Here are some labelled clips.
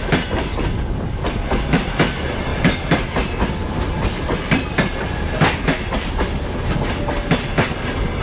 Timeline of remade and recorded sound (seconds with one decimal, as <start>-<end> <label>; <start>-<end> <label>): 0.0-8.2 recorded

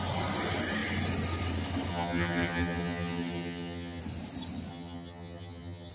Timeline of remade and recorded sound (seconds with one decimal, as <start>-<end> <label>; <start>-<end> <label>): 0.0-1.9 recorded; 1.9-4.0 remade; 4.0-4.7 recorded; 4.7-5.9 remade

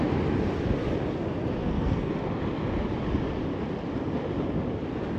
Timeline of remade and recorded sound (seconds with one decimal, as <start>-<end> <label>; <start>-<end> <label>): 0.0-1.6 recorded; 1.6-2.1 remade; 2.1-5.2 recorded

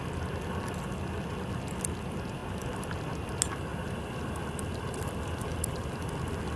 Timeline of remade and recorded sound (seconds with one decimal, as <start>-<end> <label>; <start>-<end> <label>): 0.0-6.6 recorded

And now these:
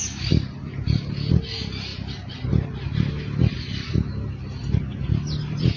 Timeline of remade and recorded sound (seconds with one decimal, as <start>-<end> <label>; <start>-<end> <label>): 0.0-5.8 recorded

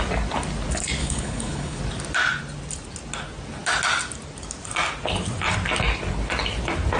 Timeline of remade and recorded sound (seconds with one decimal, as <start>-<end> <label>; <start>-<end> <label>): 0.0-1.0 recorded; 1.0-1.8 remade; 1.8-7.0 recorded